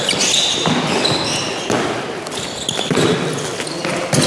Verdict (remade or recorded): recorded